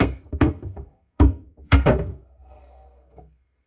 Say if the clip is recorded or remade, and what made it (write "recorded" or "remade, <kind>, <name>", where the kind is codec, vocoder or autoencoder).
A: remade, codec, SNAC